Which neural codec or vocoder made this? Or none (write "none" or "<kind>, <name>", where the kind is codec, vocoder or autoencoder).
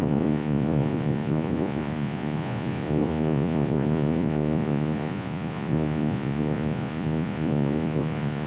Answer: vocoder, Vocos